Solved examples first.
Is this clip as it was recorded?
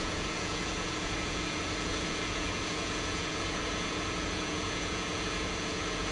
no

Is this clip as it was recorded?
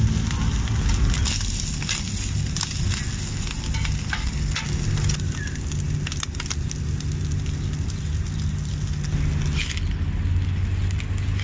yes